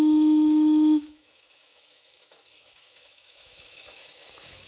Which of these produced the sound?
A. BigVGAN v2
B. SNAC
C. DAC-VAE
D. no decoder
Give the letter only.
C